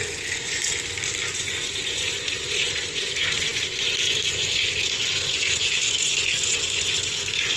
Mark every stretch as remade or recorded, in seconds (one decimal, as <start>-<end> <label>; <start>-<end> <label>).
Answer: 0.0-0.6 remade; 0.6-1.3 recorded; 1.3-7.6 remade